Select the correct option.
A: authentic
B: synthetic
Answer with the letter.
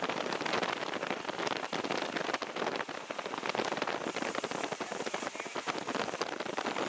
A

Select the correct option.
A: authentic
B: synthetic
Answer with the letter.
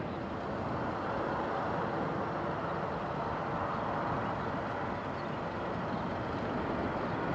A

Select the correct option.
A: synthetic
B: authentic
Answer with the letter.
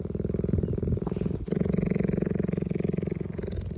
B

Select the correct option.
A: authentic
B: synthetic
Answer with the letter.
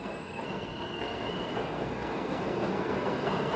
B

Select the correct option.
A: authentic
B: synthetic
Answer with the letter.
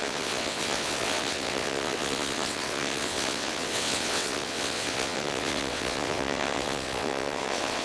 B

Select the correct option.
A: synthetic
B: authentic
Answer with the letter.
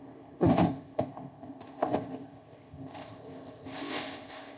A